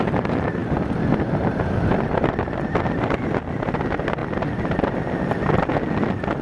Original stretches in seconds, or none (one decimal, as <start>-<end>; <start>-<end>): 0.0-6.4